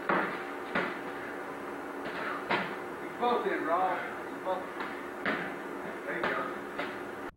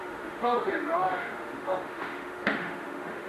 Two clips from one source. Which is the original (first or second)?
first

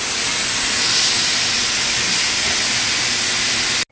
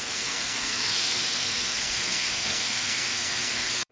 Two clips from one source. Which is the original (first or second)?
first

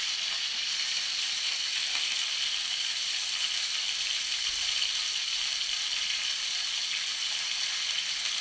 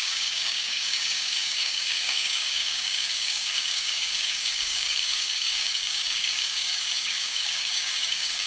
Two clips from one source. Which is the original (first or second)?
first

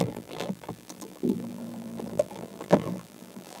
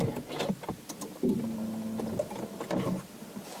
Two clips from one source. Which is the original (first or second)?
second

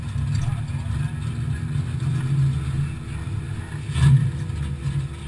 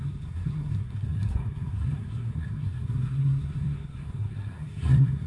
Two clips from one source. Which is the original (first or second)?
first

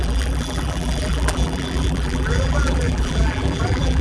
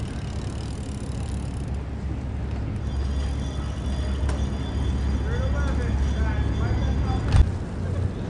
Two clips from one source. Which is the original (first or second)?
second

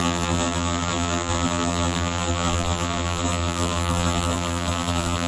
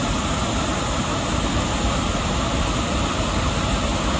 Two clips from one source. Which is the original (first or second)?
second